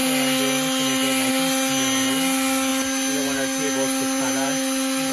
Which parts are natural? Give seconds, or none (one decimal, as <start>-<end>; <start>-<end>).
0.0-5.1